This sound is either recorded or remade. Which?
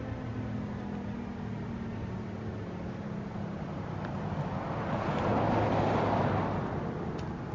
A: recorded